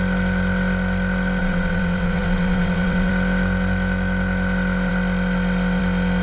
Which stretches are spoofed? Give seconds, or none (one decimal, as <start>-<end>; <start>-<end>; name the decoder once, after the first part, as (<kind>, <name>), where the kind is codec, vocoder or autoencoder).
1.4-3.1 (vocoder, WaveNeXt)